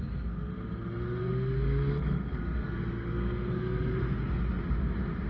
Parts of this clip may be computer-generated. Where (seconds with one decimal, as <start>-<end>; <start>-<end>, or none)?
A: 1.2-4.4